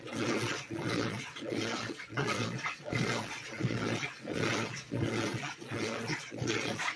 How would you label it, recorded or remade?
remade